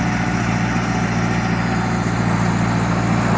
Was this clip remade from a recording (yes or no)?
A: no